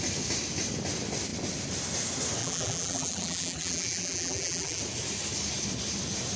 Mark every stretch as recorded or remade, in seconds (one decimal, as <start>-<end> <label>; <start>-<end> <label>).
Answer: 0.0-2.4 recorded; 2.4-4.8 remade; 4.8-6.4 recorded